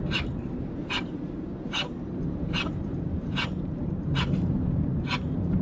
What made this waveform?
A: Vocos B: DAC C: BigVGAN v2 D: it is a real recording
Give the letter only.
C